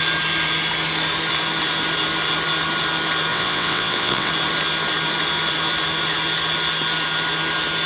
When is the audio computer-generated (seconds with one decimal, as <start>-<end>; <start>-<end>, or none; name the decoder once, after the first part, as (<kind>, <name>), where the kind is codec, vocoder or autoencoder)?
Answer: 3.3-4.3 (vocoder, WaveNeXt)